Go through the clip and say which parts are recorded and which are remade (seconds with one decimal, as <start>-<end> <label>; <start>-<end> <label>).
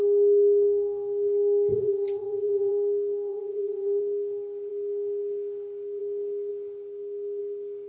0.0-1.7 recorded; 1.7-2.7 remade; 2.7-3.3 recorded; 3.3-4.0 remade; 4.0-7.9 recorded